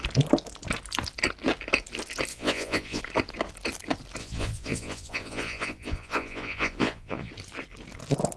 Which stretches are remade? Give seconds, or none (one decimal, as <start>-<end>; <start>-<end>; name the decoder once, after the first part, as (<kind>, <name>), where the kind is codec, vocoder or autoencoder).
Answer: 2.3-3.0 (vocoder, Vocos); 4.2-7.3